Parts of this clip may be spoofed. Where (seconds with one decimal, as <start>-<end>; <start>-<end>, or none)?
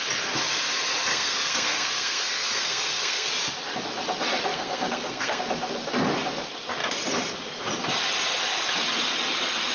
1.1-3.3; 4.5-5.4